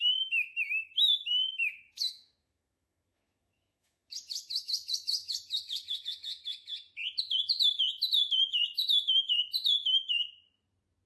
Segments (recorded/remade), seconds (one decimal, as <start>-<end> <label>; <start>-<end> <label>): 0.0-6.7 remade; 6.7-11.1 recorded